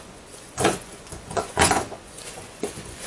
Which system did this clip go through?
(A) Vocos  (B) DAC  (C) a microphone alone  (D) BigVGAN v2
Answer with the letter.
A